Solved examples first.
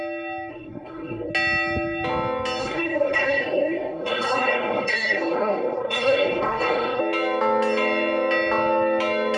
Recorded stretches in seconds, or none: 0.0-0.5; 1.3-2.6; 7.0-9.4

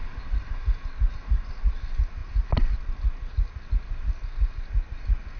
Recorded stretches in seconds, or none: 0.0-5.4

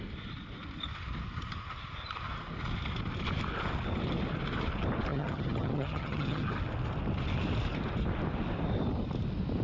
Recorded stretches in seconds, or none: 0.0-5.1; 6.5-9.6

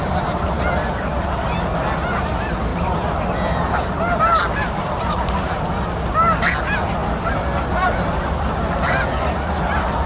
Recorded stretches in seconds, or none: 0.0-10.1

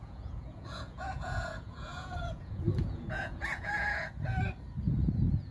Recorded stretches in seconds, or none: 4.0-4.9

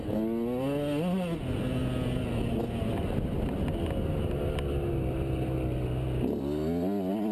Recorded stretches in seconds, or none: 0.0-7.3

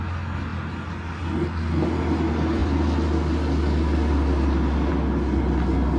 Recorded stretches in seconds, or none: 0.0-6.0